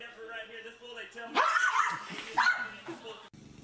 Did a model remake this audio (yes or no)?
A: no